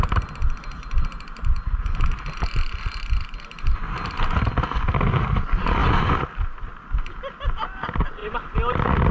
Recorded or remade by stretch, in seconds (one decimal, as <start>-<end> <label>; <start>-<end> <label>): 0.0-9.1 recorded

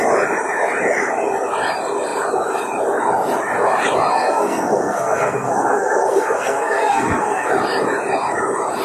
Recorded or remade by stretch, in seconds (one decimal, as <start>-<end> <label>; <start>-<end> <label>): 0.0-4.1 recorded; 4.1-7.5 remade; 7.5-8.8 recorded

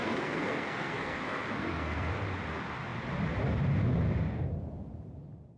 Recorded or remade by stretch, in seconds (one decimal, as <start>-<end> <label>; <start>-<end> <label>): 0.0-2.1 remade; 2.1-5.6 recorded

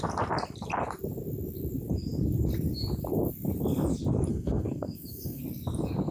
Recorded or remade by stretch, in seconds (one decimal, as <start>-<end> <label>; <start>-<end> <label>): 0.0-4.3 recorded; 4.3-5.4 remade; 5.4-6.1 recorded

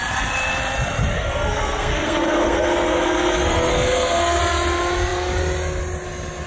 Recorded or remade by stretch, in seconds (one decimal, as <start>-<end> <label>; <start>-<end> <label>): 0.0-1.1 recorded; 1.1-4.4 remade; 4.4-6.5 recorded